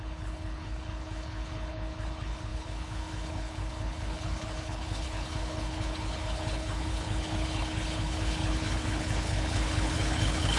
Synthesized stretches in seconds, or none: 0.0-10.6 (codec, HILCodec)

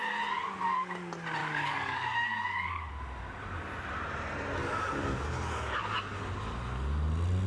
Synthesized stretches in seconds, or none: 1.4-2.9 (codec, DAC); 4.6-6.2

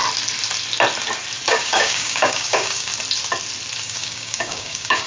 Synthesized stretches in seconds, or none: 1.5-2.9 (codec, DAC); 3.8-5.1